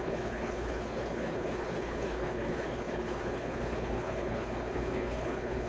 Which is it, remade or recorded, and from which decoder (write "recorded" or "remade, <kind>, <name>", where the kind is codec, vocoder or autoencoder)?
remade, codec, HILCodec